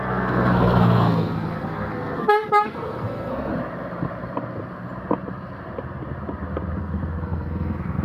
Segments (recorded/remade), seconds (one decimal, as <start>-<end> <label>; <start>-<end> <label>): 0.0-3.5 remade; 3.5-6.8 recorded; 6.8-8.0 remade